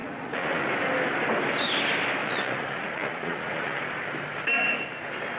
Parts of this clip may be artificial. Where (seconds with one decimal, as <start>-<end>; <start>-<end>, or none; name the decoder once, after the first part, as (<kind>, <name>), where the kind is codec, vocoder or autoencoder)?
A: 0.0-0.7 (vocoder, Vocos); 2.2-3.8